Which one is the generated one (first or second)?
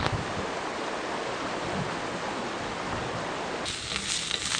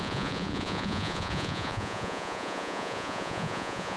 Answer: second